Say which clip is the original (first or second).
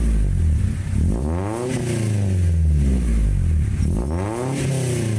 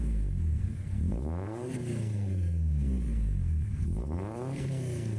first